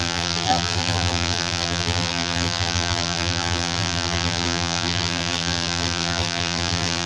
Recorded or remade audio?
remade